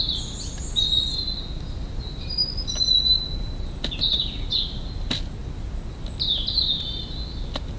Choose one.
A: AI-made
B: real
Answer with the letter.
B